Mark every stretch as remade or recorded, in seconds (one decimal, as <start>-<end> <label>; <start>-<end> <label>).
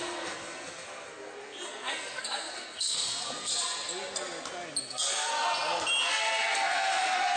0.0-3.5 remade; 3.5-4.8 recorded; 4.8-5.3 remade; 5.3-6.0 recorded; 6.0-7.4 remade